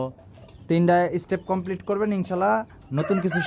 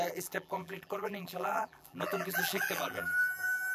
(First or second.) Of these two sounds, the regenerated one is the second